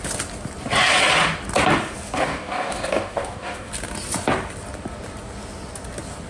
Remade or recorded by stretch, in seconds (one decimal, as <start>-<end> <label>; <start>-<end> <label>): 0.0-2.2 recorded; 2.2-3.7 remade; 3.7-6.3 recorded